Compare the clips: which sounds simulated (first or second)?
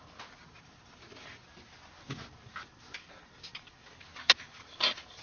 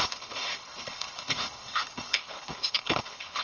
second